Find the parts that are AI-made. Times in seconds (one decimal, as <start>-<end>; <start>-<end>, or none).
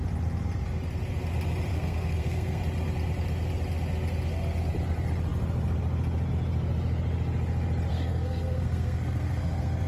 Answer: 1.7-2.6; 7.9-9.9